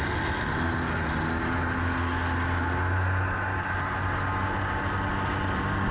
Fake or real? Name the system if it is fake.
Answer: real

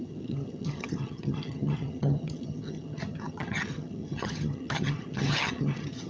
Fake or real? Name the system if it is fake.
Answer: fake, vocoder, HiFi-GAN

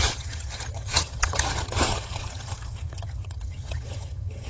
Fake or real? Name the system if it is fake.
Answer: fake, vocoder, HiFi-GAN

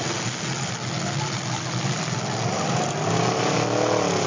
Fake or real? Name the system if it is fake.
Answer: real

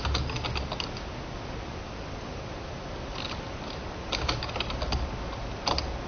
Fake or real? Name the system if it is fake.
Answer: real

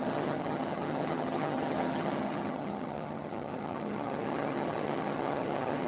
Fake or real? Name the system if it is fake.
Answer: fake, vocoder, HiFi-GAN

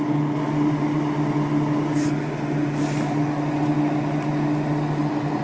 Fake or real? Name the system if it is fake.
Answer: real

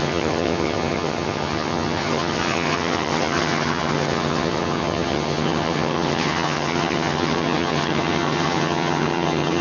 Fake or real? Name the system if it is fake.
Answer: fake, vocoder, HiFi-GAN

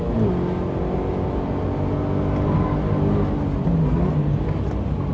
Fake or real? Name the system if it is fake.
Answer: real